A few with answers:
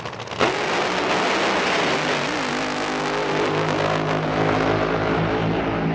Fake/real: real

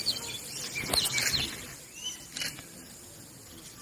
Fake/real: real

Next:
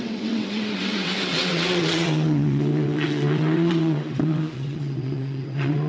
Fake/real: fake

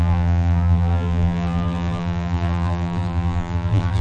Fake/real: fake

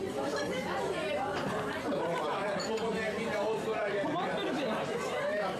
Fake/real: fake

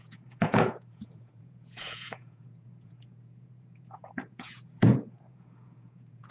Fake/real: fake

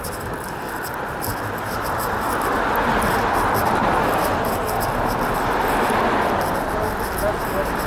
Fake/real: real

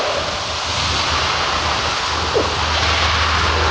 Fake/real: real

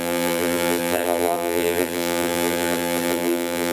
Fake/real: fake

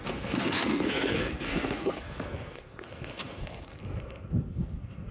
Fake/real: fake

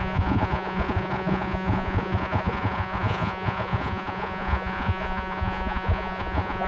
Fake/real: fake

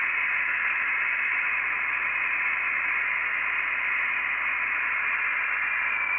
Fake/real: real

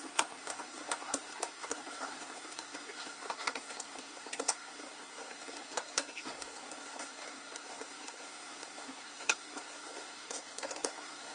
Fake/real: fake